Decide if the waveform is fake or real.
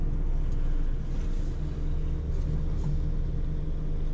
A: real